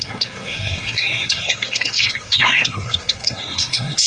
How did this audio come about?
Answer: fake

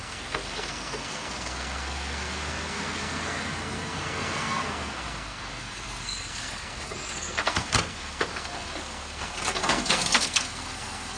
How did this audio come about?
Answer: fake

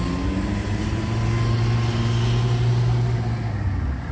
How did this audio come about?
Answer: real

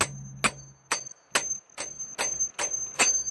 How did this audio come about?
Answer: real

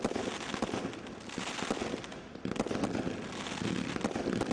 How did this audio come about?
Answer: real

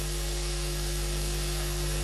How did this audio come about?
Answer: fake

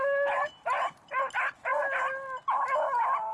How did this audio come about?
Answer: real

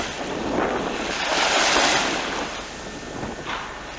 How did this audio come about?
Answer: real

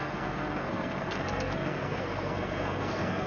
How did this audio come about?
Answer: fake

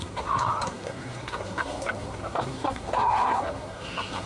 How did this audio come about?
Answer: fake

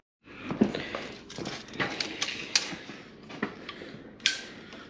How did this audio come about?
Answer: real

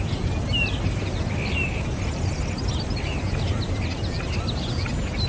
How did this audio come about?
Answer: real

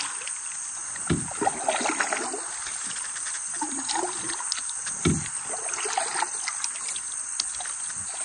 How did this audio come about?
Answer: real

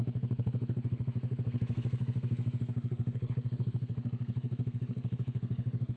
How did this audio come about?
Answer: fake